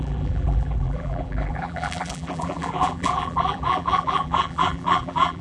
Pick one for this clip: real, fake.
fake